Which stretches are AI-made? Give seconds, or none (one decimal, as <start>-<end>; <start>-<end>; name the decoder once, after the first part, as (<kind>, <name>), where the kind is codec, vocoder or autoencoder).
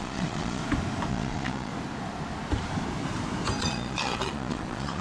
0.0-0.6 (vocoder, Vocos); 1.1-1.7; 3.6-5.0